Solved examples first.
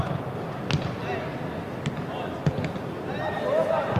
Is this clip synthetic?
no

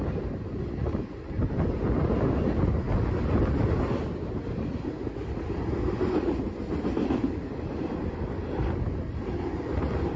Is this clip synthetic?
no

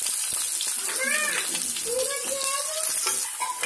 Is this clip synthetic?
no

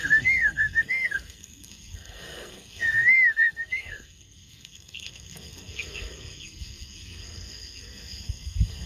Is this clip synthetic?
yes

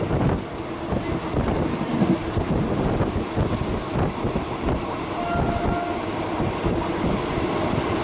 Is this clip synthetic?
no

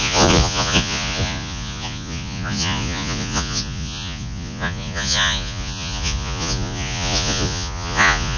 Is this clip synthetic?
yes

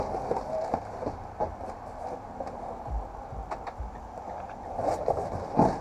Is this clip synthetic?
no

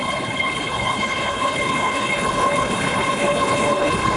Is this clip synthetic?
yes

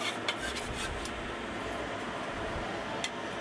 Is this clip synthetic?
no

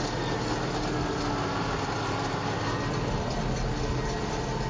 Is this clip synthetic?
no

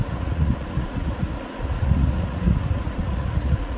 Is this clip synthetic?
yes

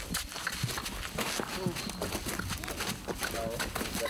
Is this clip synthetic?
no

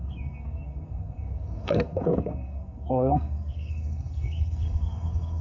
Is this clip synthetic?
yes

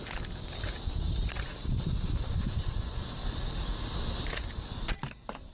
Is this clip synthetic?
no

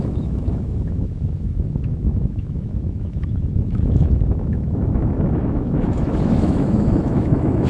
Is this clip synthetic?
yes